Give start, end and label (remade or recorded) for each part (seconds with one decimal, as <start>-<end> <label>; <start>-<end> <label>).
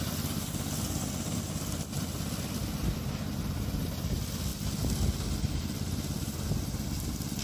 0.0-7.4 recorded